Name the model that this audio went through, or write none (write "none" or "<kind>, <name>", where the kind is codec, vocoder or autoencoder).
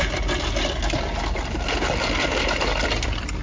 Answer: none